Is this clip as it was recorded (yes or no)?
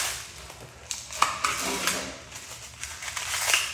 yes